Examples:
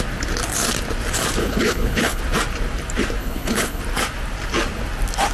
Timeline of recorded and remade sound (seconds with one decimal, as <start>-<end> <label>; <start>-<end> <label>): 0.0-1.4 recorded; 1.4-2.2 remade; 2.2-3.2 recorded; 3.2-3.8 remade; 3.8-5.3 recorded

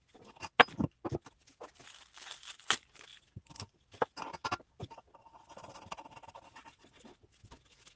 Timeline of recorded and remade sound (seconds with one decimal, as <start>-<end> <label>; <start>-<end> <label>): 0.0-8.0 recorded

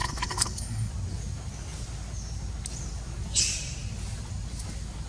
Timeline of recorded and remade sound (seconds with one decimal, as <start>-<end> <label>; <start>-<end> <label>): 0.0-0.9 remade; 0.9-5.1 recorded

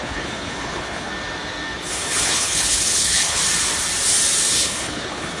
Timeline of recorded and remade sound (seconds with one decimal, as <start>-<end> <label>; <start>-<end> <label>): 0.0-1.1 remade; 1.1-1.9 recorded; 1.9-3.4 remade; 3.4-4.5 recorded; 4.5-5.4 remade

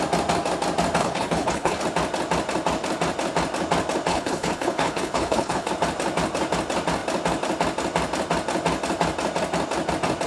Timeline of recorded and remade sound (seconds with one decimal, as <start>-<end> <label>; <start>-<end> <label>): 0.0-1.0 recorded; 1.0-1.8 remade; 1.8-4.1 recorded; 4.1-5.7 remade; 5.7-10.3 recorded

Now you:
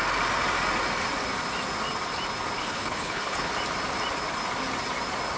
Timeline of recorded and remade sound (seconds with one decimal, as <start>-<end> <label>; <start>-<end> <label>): 0.0-2.6 recorded; 2.6-3.5 remade; 3.5-5.4 recorded

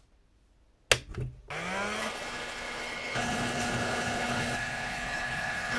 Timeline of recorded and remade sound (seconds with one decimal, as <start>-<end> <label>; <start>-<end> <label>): 0.0-2.0 recorded; 2.0-5.8 remade

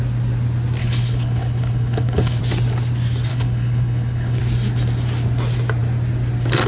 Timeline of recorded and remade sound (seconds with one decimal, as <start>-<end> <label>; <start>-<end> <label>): 0.0-0.8 recorded; 0.8-2.4 remade; 2.4-3.3 recorded; 3.3-4.4 remade; 4.4-6.7 recorded